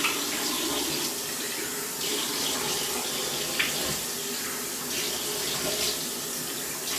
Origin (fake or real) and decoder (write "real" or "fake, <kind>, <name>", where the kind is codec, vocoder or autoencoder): real